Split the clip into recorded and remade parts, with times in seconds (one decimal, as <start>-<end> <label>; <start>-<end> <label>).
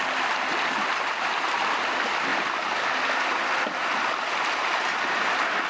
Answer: 0.0-5.7 recorded